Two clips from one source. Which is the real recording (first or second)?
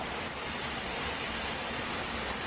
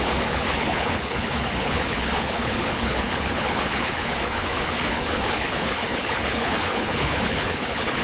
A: first